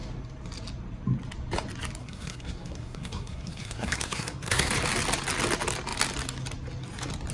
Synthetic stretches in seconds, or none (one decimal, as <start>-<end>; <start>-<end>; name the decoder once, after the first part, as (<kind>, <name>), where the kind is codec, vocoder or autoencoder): 2.0-4.7 (codec, SNAC)